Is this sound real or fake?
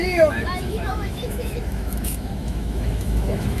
fake